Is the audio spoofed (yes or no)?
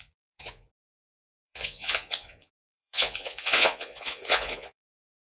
yes